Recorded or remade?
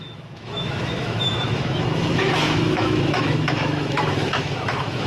remade